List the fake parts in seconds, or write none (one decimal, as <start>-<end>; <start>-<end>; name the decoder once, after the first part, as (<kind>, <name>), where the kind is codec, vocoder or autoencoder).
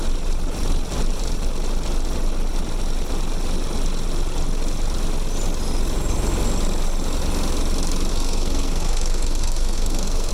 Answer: 8.1-10.3 (codec, SNAC)